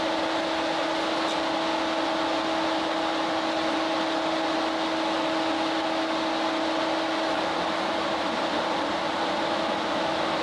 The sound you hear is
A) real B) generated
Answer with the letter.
A